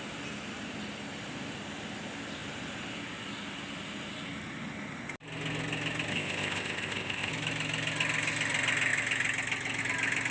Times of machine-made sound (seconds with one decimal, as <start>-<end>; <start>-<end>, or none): 6.1-7.3

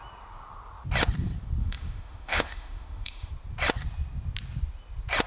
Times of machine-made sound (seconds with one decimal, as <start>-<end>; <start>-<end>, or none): 1.6-3.3

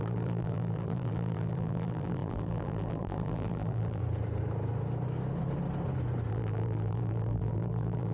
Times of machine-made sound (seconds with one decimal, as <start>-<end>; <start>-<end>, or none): 0.0-4.0; 6.3-8.1

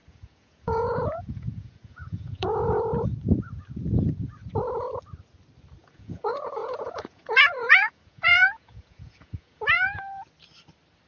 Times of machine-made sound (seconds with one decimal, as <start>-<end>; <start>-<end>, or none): 0.0-2.8; 5.8-10.0

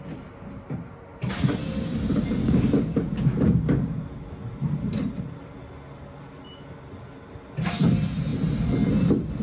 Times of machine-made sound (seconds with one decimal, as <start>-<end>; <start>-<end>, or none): 2.4-3.9

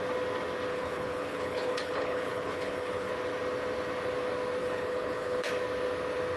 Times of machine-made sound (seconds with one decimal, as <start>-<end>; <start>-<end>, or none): 0.7-3.1; 4.6-5.5

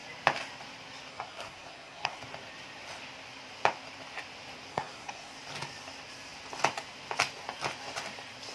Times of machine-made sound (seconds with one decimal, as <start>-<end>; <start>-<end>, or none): 1.1-2.2; 4.7-5.3